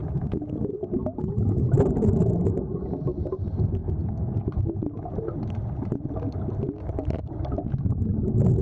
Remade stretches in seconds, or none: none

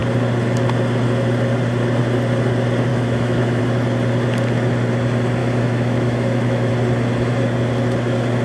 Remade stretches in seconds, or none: 2.9-3.6 (autoencoder, DAC-VAE); 5.4-6.7

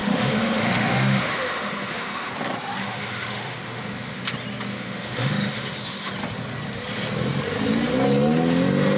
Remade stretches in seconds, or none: 0.0-2.3 (autoencoder, DAC-VAE); 2.8-4.2; 4.7-6.1

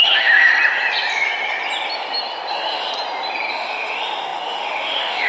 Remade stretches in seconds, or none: 0.0-0.5 (autoencoder, DAC-VAE); 2.5-2.9; 3.5-5.3